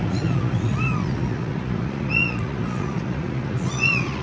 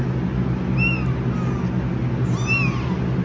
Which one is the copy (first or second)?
first